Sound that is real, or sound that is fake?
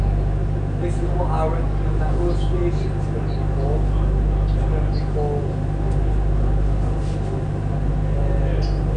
real